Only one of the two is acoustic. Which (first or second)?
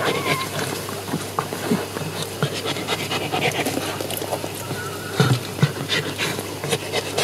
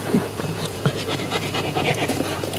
first